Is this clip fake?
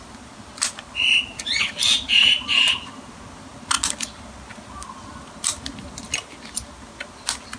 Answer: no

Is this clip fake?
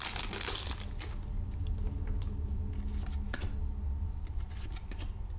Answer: no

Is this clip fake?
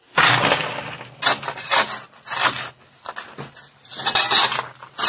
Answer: no